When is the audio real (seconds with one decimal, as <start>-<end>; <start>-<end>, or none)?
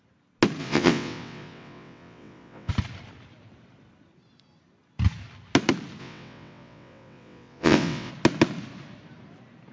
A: 0.0-0.6; 2.7-6.0; 8.1-9.7